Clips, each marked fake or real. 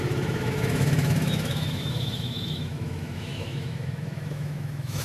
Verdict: fake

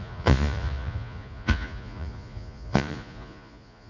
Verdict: fake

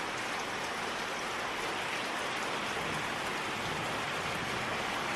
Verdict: real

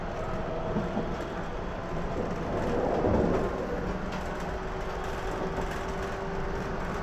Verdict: real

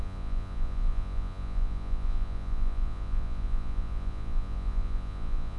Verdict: fake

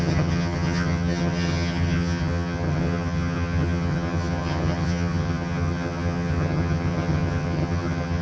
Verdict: fake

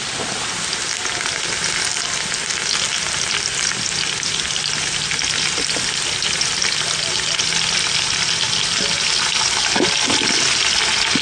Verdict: real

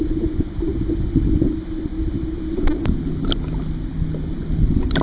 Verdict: real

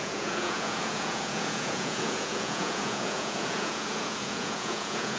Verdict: fake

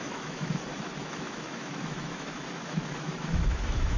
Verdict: fake